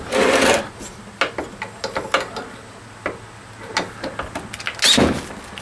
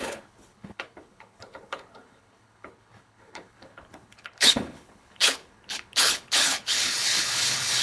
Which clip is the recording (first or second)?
first